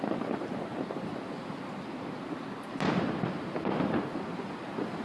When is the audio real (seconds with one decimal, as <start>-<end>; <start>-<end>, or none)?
0.0-5.0